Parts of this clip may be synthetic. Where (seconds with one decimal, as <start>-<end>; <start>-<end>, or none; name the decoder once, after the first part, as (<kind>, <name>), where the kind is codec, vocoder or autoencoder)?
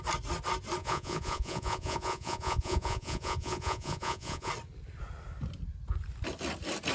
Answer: 0.8-4.5 (vocoder, Vocos)